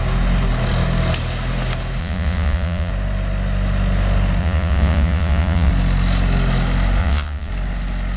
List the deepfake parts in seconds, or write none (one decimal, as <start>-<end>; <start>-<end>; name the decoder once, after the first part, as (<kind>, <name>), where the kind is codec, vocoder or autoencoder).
2.0-2.9 (vocoder, Vocos); 4.4-5.7; 7.0-7.5